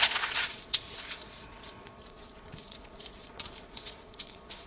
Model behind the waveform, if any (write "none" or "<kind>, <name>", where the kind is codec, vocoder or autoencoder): vocoder, Vocos